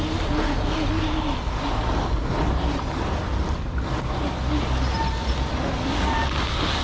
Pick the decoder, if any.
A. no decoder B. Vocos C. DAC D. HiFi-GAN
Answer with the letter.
A